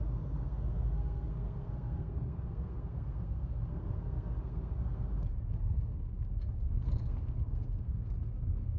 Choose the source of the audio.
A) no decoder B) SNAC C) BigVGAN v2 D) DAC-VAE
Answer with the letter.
B